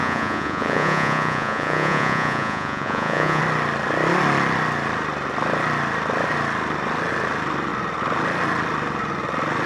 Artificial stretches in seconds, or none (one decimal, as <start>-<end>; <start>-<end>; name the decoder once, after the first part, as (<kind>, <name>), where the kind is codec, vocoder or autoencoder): 0.0-3.4 (vocoder, Vocos)